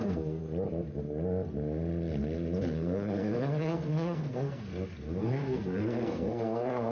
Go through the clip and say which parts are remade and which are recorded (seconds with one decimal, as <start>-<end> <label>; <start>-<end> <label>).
0.0-0.4 remade; 0.4-2.6 recorded; 2.6-4.7 remade; 4.7-5.2 recorded; 5.2-6.9 remade